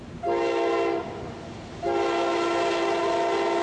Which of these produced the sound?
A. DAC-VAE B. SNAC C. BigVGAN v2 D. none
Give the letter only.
D